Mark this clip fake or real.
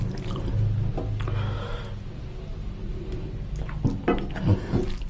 real